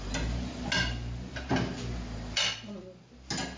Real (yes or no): yes